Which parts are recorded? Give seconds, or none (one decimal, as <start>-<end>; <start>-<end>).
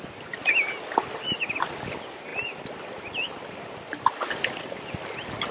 0.0-5.5